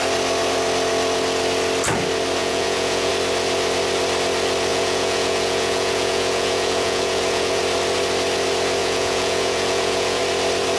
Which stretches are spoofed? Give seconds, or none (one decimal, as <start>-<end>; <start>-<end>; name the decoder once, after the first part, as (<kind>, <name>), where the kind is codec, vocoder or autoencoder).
2.4-3.1 (vocoder, Vocos); 4.7-7.6; 8.8-10.2